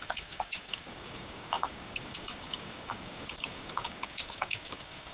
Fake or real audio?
fake